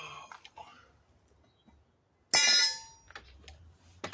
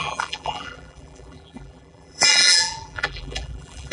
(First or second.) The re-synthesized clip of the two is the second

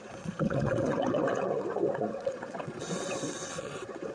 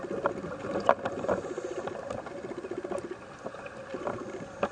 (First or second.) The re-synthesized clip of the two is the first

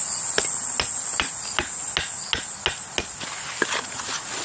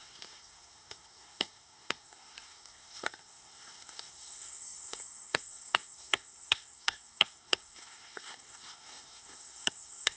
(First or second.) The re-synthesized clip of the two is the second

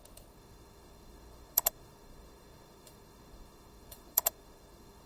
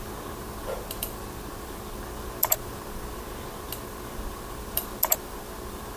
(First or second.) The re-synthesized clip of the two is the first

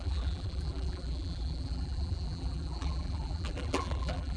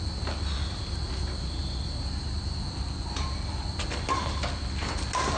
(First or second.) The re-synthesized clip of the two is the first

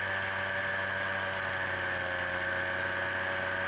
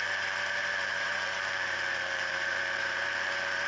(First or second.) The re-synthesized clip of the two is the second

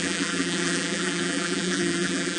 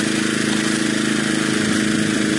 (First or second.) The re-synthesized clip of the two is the first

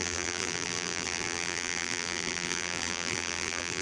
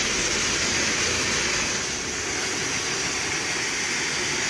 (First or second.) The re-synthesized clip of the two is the first